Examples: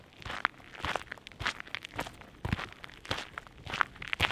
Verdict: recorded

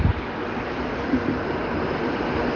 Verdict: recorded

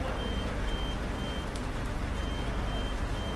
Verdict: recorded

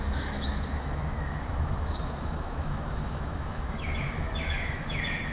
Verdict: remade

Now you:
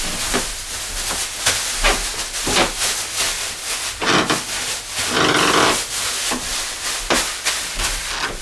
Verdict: recorded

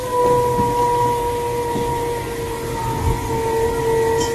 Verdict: recorded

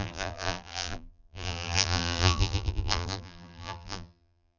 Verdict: remade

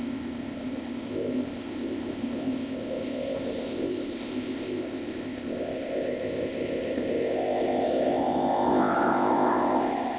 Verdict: remade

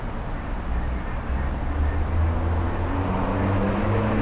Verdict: recorded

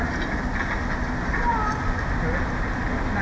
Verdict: recorded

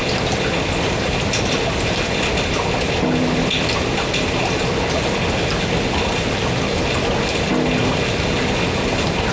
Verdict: recorded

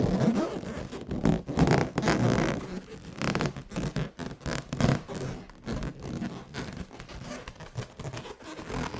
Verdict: recorded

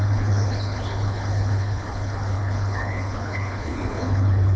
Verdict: remade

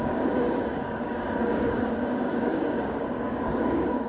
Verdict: remade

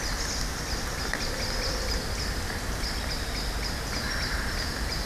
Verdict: recorded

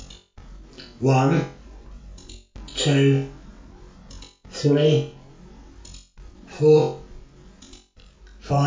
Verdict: recorded